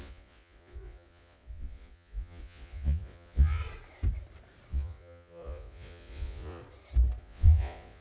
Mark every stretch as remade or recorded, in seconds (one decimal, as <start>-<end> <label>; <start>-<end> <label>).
0.0-3.6 remade; 3.6-4.7 recorded; 4.7-6.6 remade; 6.6-7.2 recorded; 7.2-8.0 remade